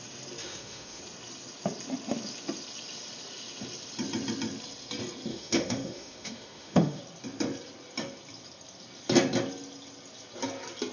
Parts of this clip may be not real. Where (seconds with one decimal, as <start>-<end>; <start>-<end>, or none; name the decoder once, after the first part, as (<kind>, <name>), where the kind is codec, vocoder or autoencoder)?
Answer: 0.4-1.0 (autoencoder, DAC-VAE); 5.3-7.0